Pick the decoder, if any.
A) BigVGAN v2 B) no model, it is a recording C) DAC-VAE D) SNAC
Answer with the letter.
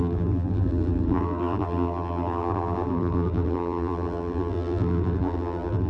A